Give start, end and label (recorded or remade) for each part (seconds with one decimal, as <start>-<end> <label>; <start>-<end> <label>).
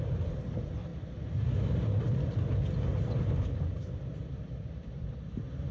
0.0-5.7 recorded